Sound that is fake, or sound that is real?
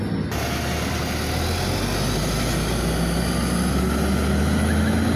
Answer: real